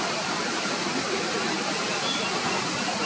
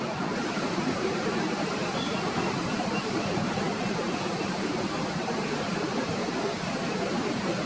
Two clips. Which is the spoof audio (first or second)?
second